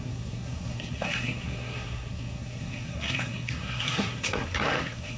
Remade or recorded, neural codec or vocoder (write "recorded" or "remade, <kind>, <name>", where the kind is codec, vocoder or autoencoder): remade, codec, SNAC